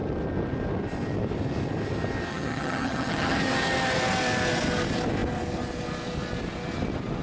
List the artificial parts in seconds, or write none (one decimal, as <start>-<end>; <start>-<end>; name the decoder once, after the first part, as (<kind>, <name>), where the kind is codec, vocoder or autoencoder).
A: 2.3-3.4 (vocoder, HiFi-GAN)